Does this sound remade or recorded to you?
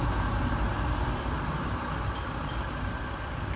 recorded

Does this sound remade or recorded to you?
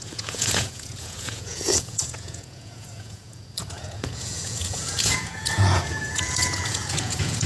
remade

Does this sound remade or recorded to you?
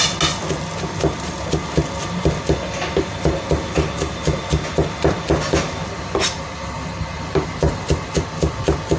recorded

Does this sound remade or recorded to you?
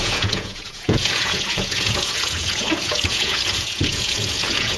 remade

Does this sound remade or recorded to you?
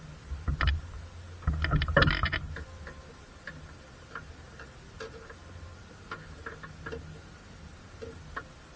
recorded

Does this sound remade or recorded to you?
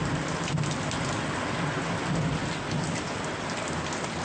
recorded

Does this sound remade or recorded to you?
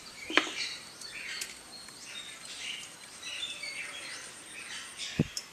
remade